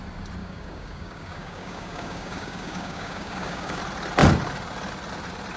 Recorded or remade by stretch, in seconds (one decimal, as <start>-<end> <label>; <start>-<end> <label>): 0.0-0.4 recorded; 0.4-3.8 remade; 3.8-5.6 recorded